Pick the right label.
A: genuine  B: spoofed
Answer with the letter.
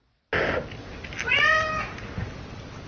A